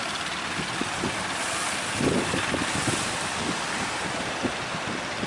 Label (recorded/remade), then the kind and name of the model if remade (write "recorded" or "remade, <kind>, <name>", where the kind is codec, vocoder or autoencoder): recorded